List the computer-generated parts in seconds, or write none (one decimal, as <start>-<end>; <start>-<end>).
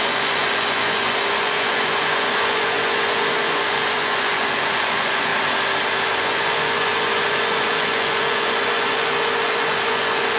0.0-5.3; 6.2-10.4